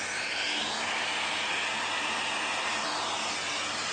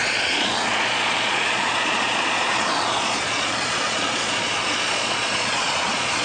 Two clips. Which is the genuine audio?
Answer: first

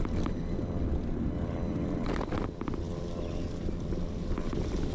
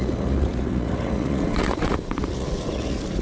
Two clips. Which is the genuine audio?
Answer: first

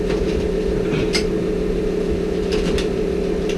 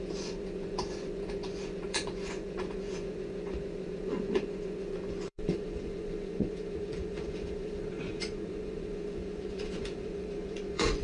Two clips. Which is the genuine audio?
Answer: first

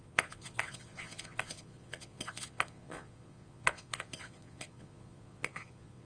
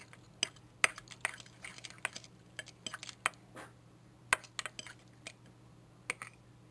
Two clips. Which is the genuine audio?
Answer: second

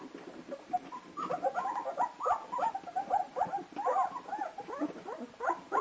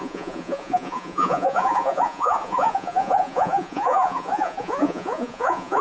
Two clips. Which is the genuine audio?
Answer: first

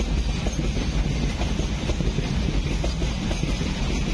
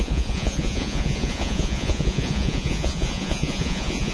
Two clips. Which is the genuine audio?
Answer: first